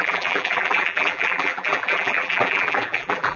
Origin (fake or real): fake